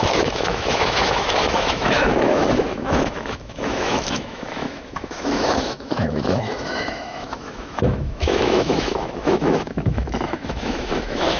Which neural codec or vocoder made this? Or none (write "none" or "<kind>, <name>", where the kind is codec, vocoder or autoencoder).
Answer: autoencoder, DAC-VAE